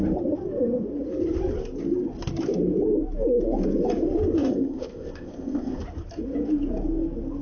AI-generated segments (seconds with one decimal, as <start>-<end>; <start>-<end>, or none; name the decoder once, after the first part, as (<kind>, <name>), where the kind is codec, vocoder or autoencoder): 4.5-5.8 (codec, ZipCodec)